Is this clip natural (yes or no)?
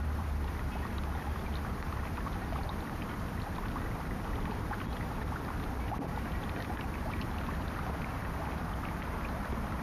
no